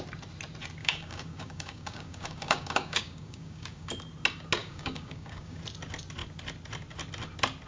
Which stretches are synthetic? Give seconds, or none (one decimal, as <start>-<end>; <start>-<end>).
0.8-3.9; 4.6-5.6